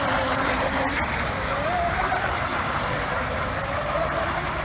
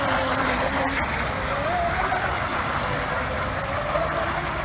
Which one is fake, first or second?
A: first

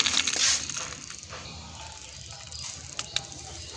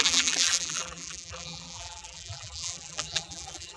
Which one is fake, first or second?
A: second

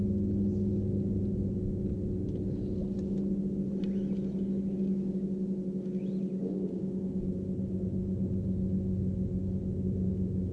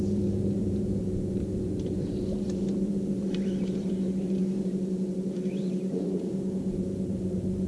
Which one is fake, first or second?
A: second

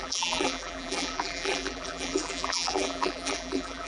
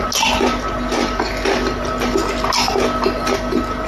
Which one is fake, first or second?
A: first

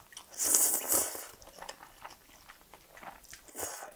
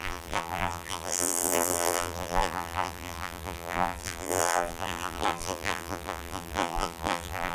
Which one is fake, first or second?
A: second